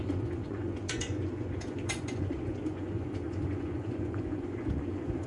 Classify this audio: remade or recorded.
remade